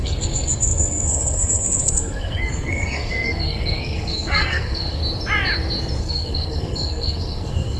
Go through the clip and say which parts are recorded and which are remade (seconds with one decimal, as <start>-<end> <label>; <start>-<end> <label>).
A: 0.0-5.0 remade; 5.0-6.0 recorded; 6.0-7.8 remade